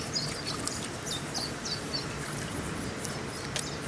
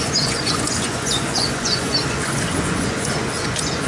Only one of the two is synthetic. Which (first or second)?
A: second